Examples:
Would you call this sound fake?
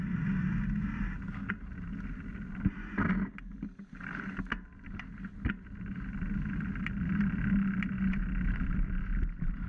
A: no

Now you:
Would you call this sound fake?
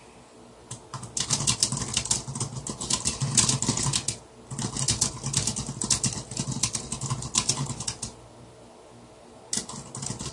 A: no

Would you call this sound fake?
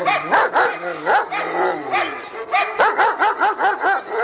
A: no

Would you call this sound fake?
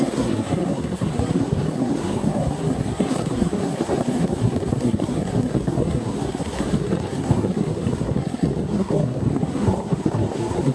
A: yes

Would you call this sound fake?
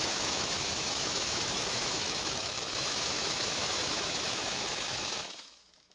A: yes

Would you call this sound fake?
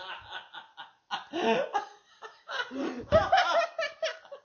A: no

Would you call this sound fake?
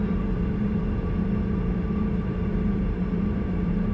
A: yes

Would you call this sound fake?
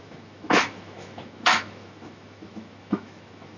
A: yes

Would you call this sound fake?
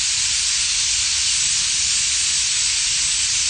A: no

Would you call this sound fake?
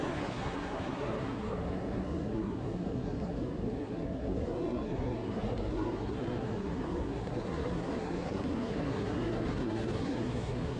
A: yes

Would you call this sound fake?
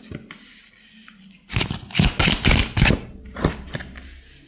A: no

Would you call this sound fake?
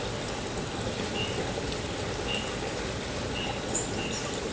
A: yes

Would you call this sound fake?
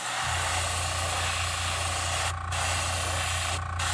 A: no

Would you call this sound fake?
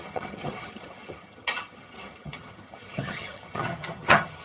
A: yes